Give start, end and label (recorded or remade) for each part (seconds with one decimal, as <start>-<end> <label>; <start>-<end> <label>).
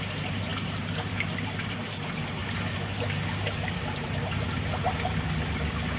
0.0-6.0 recorded